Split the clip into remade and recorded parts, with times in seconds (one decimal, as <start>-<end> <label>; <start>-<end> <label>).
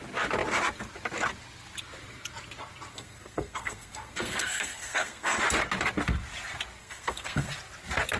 0.0-2.9 recorded; 2.9-5.4 remade; 5.4-6.8 recorded; 6.8-7.5 remade; 7.5-8.2 recorded